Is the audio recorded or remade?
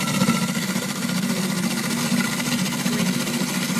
recorded